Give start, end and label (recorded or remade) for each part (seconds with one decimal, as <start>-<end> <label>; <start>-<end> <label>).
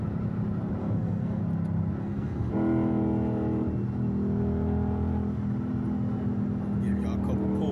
0.0-0.8 recorded; 0.8-1.4 remade; 1.4-2.0 recorded; 2.0-2.5 remade; 2.5-7.7 recorded